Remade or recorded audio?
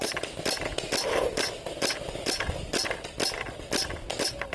remade